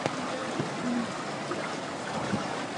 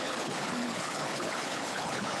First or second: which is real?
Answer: first